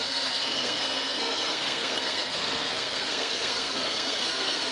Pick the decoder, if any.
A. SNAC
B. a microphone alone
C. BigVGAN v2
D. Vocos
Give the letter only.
A